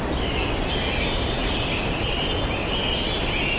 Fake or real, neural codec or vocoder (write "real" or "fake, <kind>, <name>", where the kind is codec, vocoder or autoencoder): real